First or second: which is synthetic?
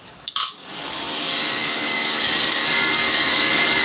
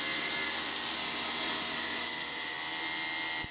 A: first